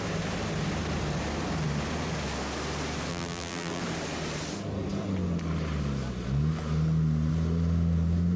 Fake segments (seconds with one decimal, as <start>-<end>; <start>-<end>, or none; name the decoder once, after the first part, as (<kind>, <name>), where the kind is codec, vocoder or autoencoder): 3.1-3.8 (vocoder, BigVGAN v2)